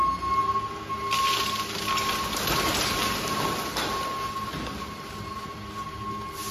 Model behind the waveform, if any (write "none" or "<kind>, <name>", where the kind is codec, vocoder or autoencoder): none